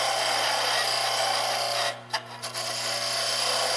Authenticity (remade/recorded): recorded